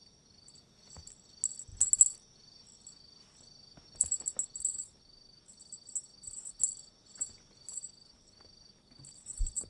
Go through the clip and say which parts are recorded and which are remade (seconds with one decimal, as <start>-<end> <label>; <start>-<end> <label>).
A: 0.0-9.7 recorded